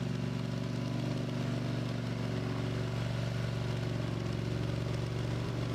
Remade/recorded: recorded